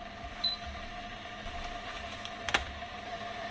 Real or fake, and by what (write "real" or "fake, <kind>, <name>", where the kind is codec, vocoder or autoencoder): real